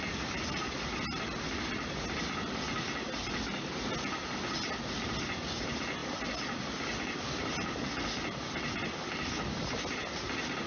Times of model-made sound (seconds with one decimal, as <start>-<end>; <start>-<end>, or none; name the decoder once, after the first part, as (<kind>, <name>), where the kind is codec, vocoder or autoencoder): none